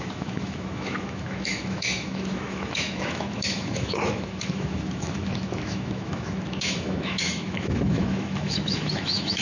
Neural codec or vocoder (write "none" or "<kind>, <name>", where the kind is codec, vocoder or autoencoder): autoencoder, DAC-VAE